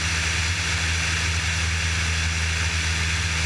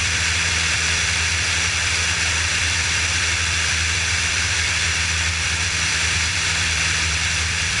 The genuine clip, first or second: first